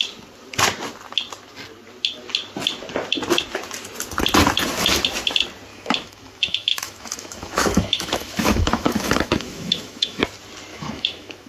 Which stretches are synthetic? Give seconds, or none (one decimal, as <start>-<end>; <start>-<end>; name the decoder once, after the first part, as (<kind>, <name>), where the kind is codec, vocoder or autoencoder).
5.7-10.2 (autoencoder, DAC-VAE); 10.7-11.5